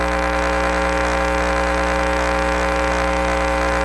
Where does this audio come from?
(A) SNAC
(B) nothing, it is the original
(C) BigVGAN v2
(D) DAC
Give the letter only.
B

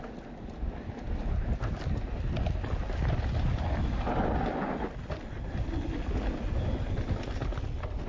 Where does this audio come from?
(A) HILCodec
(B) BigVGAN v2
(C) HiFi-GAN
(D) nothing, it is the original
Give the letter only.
D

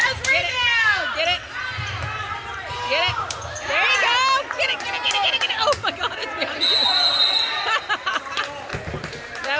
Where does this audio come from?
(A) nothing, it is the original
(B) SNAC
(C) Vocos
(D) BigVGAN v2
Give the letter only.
A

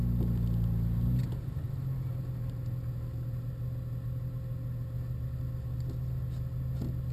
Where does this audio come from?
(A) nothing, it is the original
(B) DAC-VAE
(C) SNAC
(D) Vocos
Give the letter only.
A